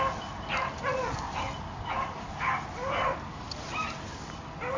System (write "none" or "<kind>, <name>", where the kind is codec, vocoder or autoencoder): none